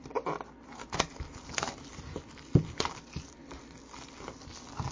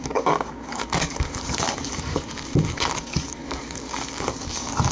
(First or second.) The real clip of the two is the first